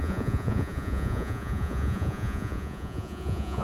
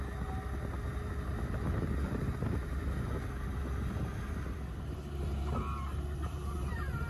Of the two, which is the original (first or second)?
second